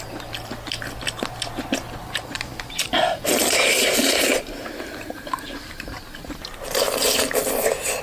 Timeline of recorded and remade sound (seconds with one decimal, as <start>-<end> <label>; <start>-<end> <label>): 0.0-2.0 recorded; 2.0-5.9 remade; 5.9-8.0 recorded